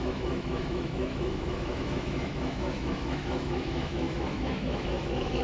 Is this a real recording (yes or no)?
no